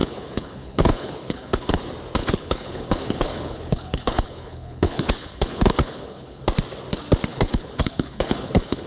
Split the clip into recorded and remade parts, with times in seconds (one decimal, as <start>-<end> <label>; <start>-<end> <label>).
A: 0.0-1.8 remade; 1.8-2.2 recorded; 2.2-6.4 remade; 6.4-7.3 recorded; 7.3-8.9 remade